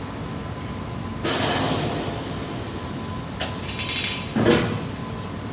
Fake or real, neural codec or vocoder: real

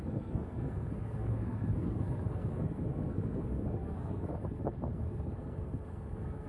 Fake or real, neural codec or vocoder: fake, codec, SNAC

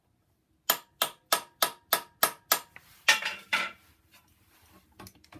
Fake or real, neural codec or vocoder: real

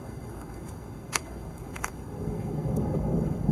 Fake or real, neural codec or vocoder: fake, codec, SNAC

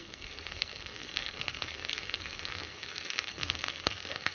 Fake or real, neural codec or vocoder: fake, codec, SNAC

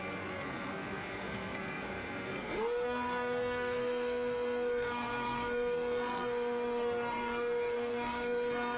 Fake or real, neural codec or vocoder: fake, codec, SNAC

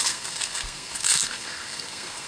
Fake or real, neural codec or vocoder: fake, codec, SNAC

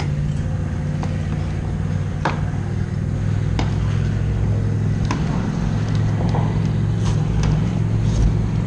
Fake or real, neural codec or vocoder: real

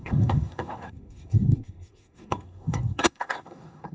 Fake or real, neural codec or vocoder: fake, codec, SNAC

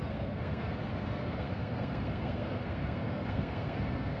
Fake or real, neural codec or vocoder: fake, codec, SNAC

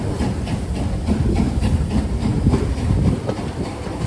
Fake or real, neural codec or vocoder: real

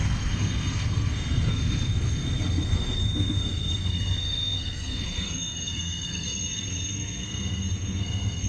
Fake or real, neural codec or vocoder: fake, codec, SNAC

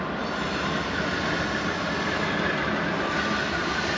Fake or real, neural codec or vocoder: real